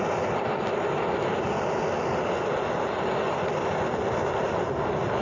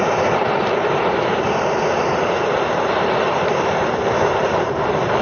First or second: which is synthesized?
second